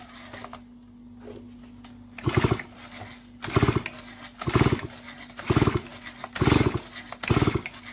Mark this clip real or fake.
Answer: real